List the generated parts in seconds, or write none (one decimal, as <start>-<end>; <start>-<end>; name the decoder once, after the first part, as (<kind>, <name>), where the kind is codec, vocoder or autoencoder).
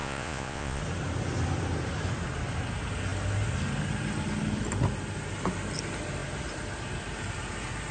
0.0-0.8 (vocoder, Vocos)